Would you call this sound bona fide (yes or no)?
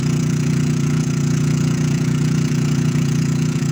no